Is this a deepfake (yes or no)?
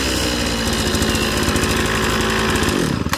no